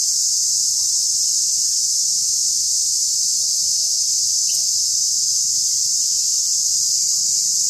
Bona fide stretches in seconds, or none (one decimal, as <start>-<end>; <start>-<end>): 0.0-7.7